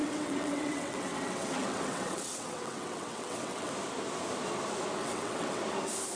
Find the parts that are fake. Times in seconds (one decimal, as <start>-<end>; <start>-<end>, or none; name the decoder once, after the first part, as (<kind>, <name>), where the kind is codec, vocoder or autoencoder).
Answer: 0.0-3.7 (vocoder, WaveNeXt); 5.0-5.6